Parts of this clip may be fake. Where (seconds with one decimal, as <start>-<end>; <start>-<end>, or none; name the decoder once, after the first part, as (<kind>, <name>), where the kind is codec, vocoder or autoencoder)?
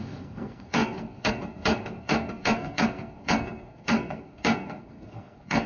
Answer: 0.0-5.7 (codec, SNAC)